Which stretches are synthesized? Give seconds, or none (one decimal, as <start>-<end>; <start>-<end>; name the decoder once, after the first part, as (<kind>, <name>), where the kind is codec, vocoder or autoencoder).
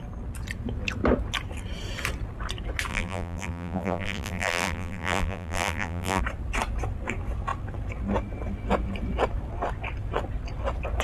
2.9-6.2 (vocoder, BigVGAN v2)